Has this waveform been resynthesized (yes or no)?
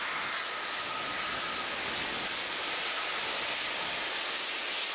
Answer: no